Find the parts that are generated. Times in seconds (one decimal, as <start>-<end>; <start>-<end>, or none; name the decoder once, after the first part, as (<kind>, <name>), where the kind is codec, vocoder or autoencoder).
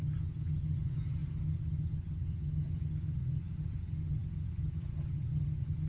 0.0-5.9 (vocoder, HiFi-GAN)